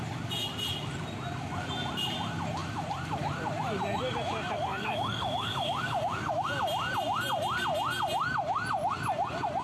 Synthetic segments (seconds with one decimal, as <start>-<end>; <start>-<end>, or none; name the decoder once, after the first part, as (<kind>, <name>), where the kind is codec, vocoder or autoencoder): 4.7-6.3 (codec, DAC)